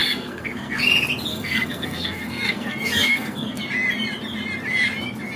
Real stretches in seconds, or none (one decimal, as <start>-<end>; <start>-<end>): 0.8-1.3; 3.6-5.4